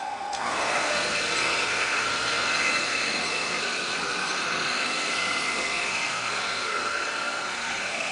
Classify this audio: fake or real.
fake